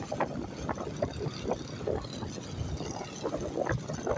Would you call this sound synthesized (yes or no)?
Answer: no